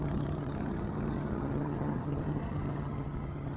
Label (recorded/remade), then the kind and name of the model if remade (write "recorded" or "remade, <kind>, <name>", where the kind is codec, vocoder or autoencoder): remade, vocoder, HiFi-GAN